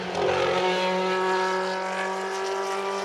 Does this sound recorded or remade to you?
recorded